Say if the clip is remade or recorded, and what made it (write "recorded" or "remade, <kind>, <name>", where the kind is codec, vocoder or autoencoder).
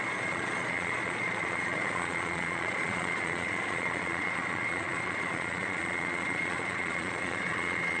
remade, vocoder, Vocos